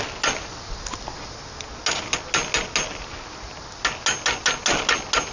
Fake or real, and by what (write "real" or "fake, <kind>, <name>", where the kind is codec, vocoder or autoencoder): real